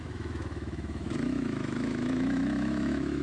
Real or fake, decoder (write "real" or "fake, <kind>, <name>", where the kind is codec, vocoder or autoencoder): fake, autoencoder, DAC-VAE